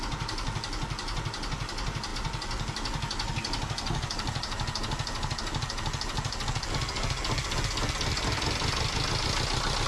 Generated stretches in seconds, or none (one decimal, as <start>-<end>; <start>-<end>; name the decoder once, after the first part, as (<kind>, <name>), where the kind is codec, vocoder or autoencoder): none